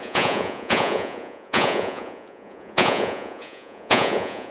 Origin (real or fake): fake